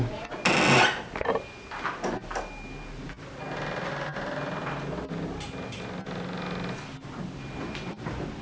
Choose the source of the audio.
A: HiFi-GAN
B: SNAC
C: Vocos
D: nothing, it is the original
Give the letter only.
D